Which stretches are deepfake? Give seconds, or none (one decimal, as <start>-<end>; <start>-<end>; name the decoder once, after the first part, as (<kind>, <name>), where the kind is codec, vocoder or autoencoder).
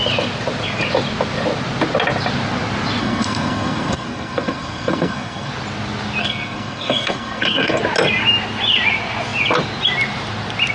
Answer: 3.0-5.5 (codec, SNAC); 6.2-7.8